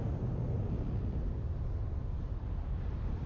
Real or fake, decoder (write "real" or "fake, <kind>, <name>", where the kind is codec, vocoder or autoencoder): real